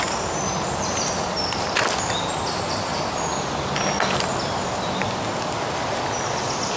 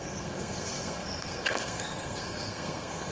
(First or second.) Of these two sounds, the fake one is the second